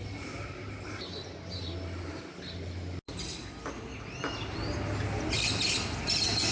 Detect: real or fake real